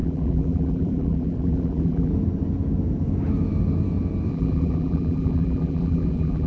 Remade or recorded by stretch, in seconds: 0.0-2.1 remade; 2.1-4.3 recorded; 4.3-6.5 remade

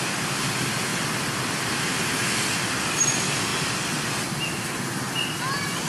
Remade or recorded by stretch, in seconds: 0.0-0.9 remade; 0.9-2.7 recorded; 2.7-3.5 remade; 3.5-5.4 recorded; 5.4-5.9 remade

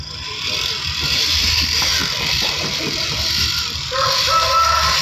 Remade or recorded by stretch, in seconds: 0.0-5.0 recorded

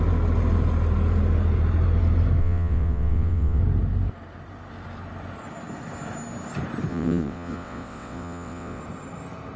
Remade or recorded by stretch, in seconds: 0.0-2.4 recorded; 2.4-3.6 remade; 3.6-6.9 recorded; 6.9-8.8 remade; 8.8-9.6 recorded